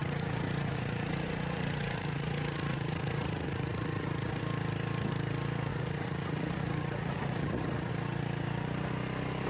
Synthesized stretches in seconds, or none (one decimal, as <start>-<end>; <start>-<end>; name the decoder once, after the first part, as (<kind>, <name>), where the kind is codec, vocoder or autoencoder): 0.0-4.4 (vocoder, Vocos); 5.7-7.9